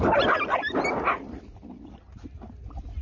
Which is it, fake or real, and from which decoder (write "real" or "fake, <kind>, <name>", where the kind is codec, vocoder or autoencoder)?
real